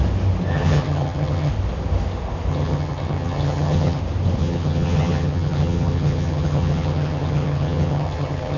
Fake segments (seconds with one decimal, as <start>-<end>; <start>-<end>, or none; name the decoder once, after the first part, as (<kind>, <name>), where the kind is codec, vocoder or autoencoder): 0.5-1.5 (vocoder, HiFi-GAN); 2.5-4.0; 4.4-8.6